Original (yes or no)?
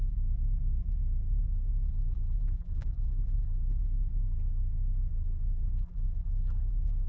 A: no